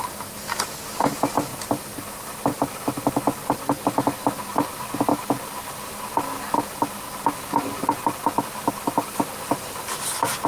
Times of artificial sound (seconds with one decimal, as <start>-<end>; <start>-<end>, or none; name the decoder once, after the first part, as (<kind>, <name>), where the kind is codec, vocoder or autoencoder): 1.5-4.2 (vocoder, BigVGAN v2); 5.1-10.5